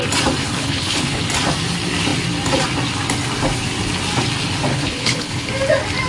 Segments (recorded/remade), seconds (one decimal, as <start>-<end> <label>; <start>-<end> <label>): 0.0-0.4 recorded; 0.4-1.2 remade; 1.2-4.7 recorded; 4.7-5.5 remade; 5.5-6.1 recorded